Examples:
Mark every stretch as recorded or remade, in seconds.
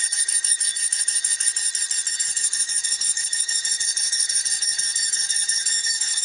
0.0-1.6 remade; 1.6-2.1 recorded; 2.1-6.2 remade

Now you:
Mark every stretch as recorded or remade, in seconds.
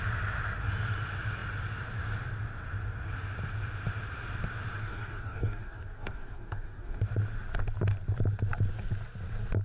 0.0-4.8 recorded; 4.8-7.0 remade; 7.0-9.6 recorded